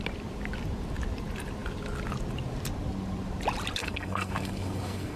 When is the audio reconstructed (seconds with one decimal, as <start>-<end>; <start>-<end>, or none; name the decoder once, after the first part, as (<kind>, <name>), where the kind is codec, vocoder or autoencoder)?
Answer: 3.8-5.2 (codec, SNAC)

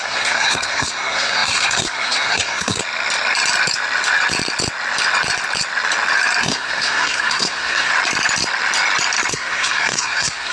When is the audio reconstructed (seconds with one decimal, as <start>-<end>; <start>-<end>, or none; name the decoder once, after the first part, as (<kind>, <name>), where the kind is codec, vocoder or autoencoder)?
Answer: 0.0-2.8 (codec, SNAC); 6.4-7.9; 9.3-10.5

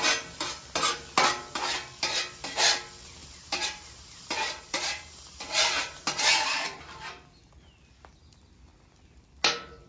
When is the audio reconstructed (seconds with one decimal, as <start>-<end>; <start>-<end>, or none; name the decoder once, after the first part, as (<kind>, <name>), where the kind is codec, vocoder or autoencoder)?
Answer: 3.2-7.5 (vocoder, BigVGAN v2)

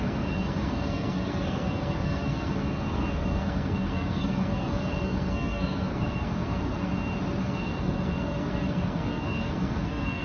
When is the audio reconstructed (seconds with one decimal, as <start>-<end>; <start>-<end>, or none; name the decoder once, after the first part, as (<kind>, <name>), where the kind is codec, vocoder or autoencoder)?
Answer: 0.0-6.9 (codec, SNAC); 7.4-10.2

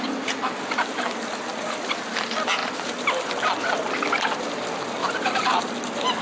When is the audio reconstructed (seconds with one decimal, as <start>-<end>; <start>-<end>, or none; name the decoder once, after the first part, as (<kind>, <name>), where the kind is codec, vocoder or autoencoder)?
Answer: 5.0-5.6 (vocoder, BigVGAN v2)

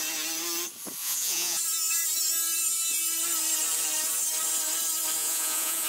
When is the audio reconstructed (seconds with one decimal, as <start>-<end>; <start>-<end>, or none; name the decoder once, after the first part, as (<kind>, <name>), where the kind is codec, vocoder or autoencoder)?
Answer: 1.0-1.6 (vocoder, Vocos); 5.2-5.9

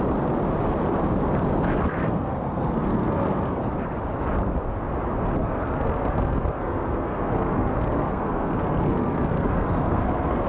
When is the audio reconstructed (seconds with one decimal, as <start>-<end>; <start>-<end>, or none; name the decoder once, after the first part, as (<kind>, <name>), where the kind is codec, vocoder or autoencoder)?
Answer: 2.0-3.6 (codec, SNAC); 5.4-10.5

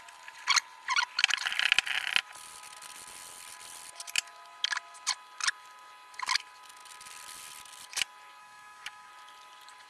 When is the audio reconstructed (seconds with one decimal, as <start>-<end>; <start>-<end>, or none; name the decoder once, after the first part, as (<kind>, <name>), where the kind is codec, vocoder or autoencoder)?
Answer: 8.4-9.1 (codec, DAC)